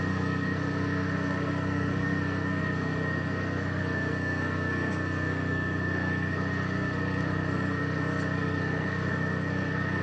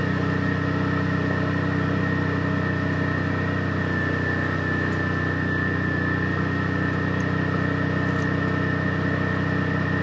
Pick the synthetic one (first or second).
first